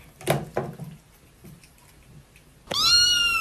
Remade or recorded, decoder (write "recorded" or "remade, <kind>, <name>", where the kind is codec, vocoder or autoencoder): recorded